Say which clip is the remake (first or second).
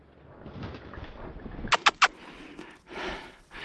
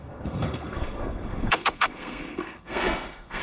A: second